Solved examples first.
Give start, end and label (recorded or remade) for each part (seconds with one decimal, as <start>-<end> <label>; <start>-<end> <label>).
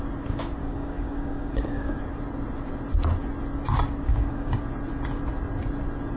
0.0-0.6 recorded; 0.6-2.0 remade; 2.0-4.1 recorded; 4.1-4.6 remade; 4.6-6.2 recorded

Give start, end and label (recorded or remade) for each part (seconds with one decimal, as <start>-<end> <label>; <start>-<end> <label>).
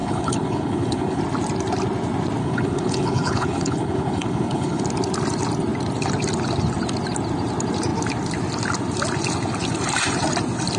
0.0-1.2 remade; 1.2-2.4 recorded; 2.4-4.8 remade; 4.8-10.8 recorded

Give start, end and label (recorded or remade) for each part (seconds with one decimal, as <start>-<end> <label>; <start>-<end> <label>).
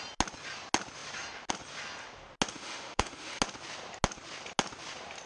0.0-2.5 recorded; 2.5-3.4 remade; 3.4-5.3 recorded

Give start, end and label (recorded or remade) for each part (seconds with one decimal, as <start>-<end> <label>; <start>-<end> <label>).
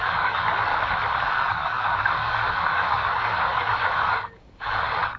0.0-0.7 remade; 0.7-1.5 recorded; 1.5-5.2 remade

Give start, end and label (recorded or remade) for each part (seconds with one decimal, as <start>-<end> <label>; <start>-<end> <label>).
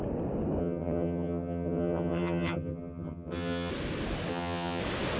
0.0-0.6 recorded; 0.6-3.7 remade; 3.7-4.3 recorded; 4.3-4.8 remade; 4.8-5.2 recorded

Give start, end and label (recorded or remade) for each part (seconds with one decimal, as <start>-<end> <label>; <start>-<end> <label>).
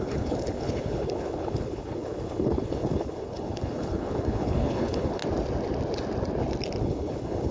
0.0-5.2 remade; 5.2-6.8 recorded; 6.8-7.5 remade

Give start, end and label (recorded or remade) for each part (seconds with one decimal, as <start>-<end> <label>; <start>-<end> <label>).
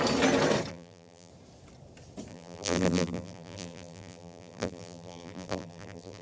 0.0-0.7 recorded; 0.7-1.3 remade; 1.3-2.3 recorded; 2.3-6.2 remade